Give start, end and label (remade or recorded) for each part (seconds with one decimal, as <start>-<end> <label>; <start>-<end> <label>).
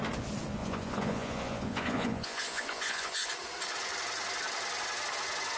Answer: 0.0-0.6 recorded; 0.6-3.3 remade; 3.3-5.6 recorded